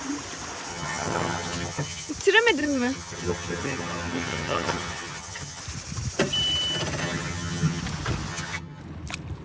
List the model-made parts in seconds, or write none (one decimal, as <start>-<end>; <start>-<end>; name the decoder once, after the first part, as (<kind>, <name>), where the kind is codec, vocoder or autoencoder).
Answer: 0.7-2.1 (vocoder, HiFi-GAN); 2.6-5.6; 7.0-7.8; 8.3-8.8